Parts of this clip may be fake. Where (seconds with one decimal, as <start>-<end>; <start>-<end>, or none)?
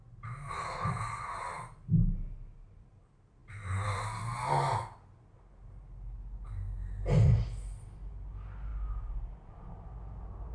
none